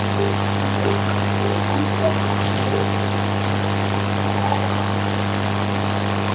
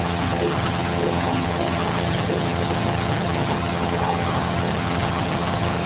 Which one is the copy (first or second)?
second